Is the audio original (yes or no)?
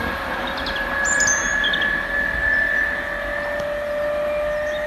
yes